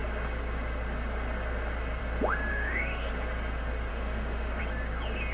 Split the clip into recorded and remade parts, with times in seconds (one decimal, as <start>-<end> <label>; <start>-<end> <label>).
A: 0.0-2.5 recorded; 2.5-3.1 remade; 3.1-3.9 recorded; 3.9-4.6 remade; 4.6-5.3 recorded